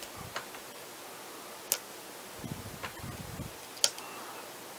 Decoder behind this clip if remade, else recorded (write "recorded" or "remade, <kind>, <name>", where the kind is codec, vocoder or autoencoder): recorded